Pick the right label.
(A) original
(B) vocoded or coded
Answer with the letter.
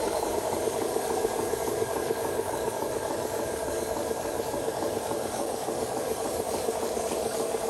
B